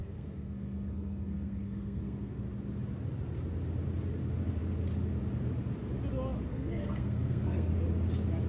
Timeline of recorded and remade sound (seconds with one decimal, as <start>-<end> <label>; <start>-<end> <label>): 0.0-2.4 remade; 2.4-6.5 recorded; 6.5-7.7 remade; 7.7-8.5 recorded